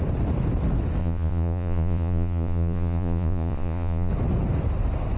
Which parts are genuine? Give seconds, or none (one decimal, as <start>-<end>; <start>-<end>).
0.0-1.0; 4.1-5.2